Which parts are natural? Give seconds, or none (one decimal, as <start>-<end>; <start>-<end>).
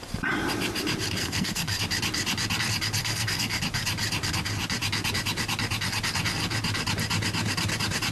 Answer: 0.0-1.2; 1.8-3.0; 3.6-8.1